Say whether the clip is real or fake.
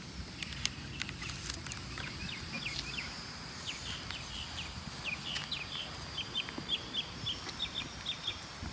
real